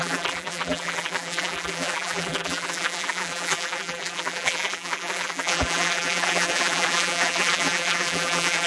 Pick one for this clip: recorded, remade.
remade